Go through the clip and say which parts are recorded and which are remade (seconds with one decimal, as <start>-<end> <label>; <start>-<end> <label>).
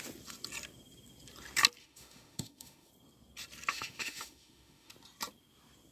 0.0-1.8 recorded; 1.8-2.9 remade; 2.9-3.7 recorded; 3.7-4.9 remade; 4.9-5.9 recorded